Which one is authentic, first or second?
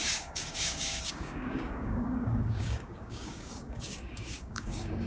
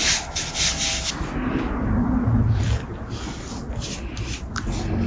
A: second